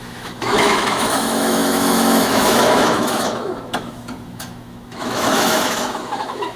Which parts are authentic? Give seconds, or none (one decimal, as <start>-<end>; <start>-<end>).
none